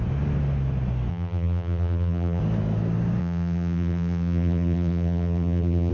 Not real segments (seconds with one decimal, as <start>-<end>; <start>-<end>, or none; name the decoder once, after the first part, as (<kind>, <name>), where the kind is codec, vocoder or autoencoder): 1.1-2.4 (vocoder, BigVGAN v2); 3.2-5.9